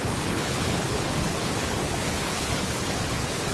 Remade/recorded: remade